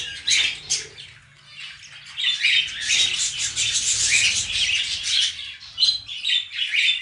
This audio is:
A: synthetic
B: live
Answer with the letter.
B